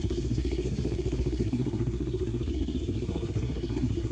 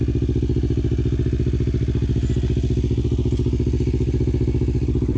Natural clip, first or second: second